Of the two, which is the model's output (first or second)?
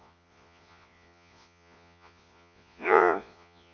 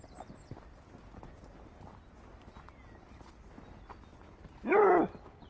first